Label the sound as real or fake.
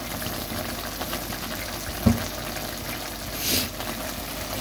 real